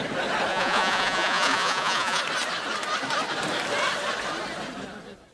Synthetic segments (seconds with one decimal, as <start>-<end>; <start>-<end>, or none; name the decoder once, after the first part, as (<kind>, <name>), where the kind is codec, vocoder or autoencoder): 0.5-2.2 (vocoder, Vocos)